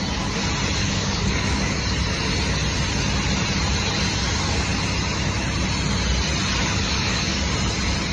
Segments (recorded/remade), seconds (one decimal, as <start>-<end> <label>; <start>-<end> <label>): 0.0-0.8 recorded; 0.8-1.8 remade; 1.8-6.6 recorded; 6.6-7.4 remade; 7.4-8.1 recorded